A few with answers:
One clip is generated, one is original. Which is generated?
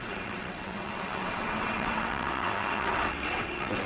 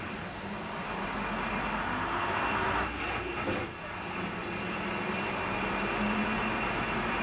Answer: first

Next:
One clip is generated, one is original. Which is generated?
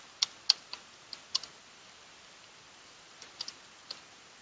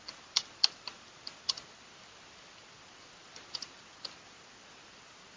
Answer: second